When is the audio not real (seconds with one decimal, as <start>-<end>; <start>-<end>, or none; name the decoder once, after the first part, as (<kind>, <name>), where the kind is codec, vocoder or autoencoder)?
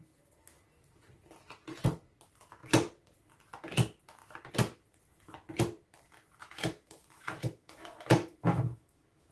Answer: 6.4-9.3 (autoencoder, DAC-VAE)